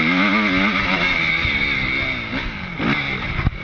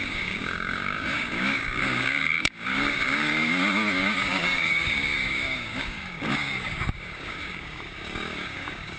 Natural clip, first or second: first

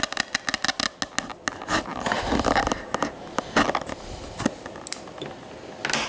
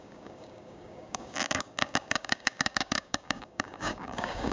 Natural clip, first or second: first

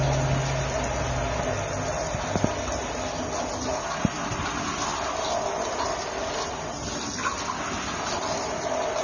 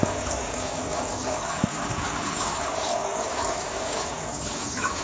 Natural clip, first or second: first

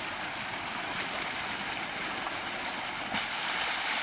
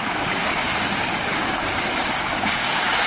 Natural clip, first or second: first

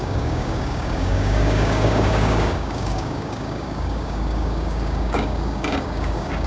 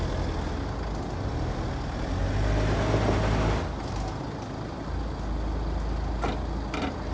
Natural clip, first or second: second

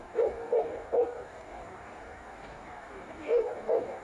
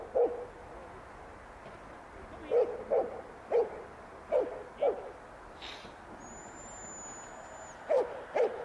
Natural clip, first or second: second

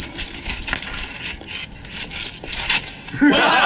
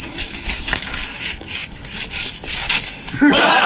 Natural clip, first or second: first